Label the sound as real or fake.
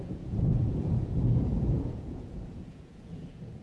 fake